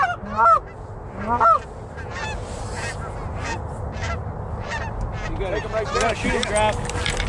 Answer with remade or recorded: recorded